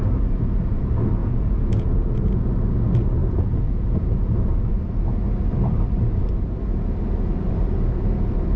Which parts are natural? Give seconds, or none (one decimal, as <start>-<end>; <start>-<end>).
0.0-1.2; 2.5-3.2; 4.3-8.6